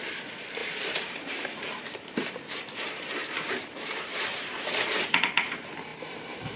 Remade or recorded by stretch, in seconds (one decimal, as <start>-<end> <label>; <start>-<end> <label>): 0.0-0.6 recorded; 0.6-4.6 remade; 4.6-5.9 recorded; 5.9-6.6 remade

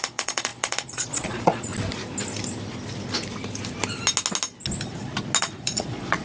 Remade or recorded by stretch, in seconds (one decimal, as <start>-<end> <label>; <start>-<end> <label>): 0.0-1.7 remade; 1.7-5.4 recorded; 5.4-6.2 remade